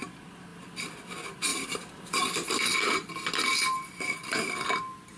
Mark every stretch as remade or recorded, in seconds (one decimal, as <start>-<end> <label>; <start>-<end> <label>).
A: 0.0-0.5 recorded; 0.5-1.1 remade; 1.1-1.5 recorded; 1.5-3.1 remade; 3.1-4.2 recorded; 4.2-4.8 remade; 4.8-5.2 recorded